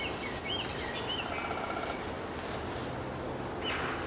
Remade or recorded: recorded